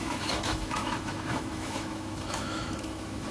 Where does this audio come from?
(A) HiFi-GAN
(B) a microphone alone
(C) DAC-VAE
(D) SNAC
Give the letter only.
C